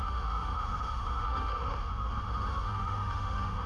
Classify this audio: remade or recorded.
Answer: remade